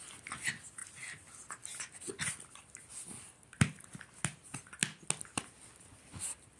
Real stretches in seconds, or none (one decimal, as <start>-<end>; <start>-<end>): 0.0-6.6